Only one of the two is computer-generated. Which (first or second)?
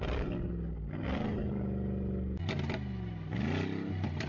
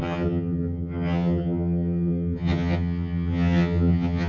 second